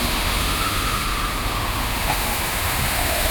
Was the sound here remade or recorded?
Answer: remade